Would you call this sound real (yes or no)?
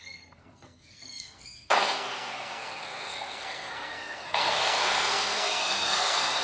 no